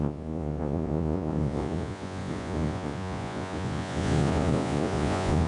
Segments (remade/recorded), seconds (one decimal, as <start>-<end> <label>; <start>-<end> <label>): 0.0-5.5 remade